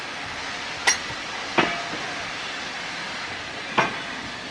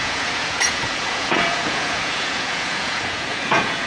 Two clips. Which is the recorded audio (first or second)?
first